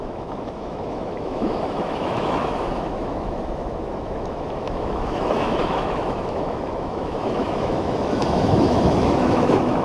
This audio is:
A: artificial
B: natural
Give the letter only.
A